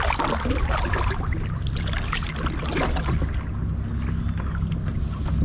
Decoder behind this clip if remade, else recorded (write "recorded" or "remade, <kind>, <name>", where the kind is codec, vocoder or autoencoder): recorded